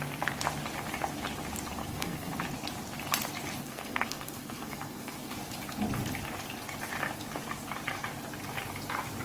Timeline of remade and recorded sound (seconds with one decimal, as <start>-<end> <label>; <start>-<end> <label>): 0.0-1.8 recorded; 1.8-2.3 remade; 2.3-3.6 recorded; 3.6-5.3 remade; 5.3-9.2 recorded